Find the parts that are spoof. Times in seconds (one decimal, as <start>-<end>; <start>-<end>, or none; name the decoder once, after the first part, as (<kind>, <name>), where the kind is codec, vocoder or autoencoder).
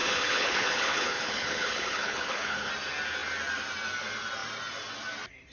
0.0-2.7 (codec, HILCodec)